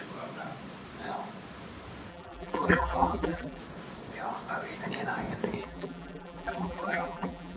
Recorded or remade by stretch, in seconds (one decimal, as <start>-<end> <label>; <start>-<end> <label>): 0.0-2.1 recorded; 2.1-3.6 remade; 3.6-5.6 recorded; 5.6-7.6 remade